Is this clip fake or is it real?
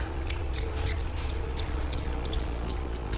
fake